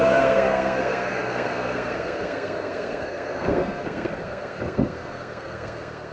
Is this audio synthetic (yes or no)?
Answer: yes